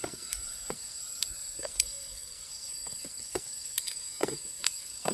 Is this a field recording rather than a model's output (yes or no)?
no